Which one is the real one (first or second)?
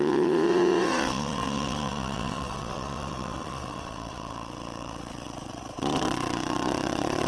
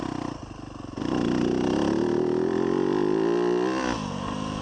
second